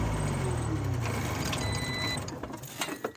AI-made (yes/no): no